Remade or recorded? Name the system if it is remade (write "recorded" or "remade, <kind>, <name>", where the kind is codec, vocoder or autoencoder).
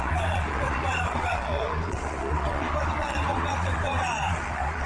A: remade, vocoder, Vocos